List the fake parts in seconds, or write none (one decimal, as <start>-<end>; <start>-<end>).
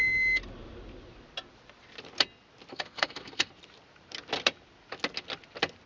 2.7-3.5